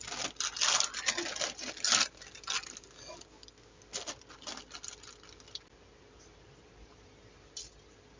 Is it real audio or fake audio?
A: real